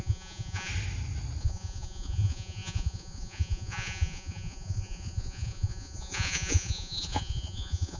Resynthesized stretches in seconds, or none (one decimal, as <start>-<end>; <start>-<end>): 0.0-0.7; 1.4-8.0